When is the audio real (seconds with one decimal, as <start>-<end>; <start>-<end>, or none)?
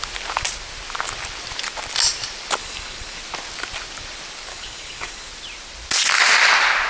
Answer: 0.0-2.6; 3.2-4.5; 5.3-6.9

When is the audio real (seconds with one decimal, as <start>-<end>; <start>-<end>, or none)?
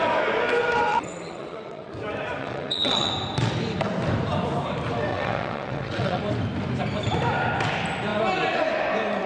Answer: 0.0-0.9; 1.9-2.4; 3.1-5.1; 6.2-9.3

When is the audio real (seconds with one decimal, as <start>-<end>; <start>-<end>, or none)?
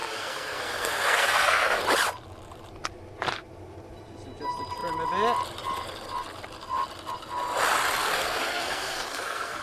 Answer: 1.8-8.0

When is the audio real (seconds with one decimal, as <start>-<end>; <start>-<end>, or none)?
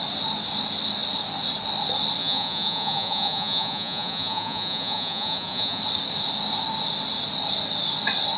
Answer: 0.0-2.2; 5.8-8.4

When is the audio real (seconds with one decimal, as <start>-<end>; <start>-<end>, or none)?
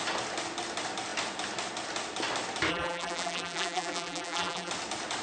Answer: 0.0-2.7; 4.7-5.2